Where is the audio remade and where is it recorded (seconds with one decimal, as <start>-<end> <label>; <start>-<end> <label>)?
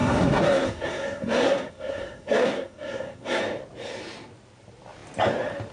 0.0-3.4 remade; 3.4-5.7 recorded